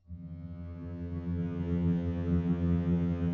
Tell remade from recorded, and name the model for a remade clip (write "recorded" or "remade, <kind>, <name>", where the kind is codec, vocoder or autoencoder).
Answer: remade, vocoder, HiFi-GAN